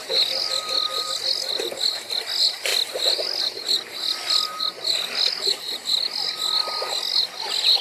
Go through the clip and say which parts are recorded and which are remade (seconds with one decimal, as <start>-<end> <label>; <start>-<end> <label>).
0.0-7.8 recorded

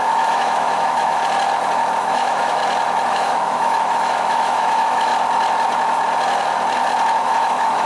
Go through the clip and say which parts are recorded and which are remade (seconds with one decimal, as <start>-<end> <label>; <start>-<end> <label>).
0.0-1.2 remade; 1.2-2.0 recorded; 2.0-2.6 remade; 2.6-3.1 recorded; 3.1-5.1 remade; 5.1-7.2 recorded; 7.2-7.9 remade

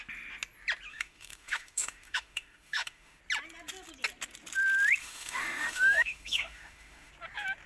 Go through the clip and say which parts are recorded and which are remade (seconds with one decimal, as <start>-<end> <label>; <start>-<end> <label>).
0.0-0.9 recorded; 0.9-3.2 remade; 3.2-5.0 recorded; 5.0-7.1 remade; 7.1-7.7 recorded